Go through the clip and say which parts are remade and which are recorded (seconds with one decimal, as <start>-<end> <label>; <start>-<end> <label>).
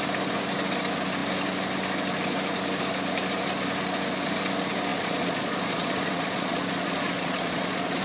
0.0-4.9 recorded; 4.9-8.0 remade